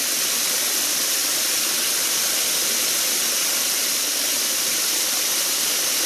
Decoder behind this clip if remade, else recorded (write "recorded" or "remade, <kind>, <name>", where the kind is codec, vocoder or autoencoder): recorded